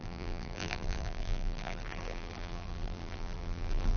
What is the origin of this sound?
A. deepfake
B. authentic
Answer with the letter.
A